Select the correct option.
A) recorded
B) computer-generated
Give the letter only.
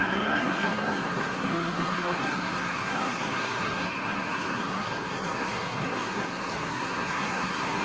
B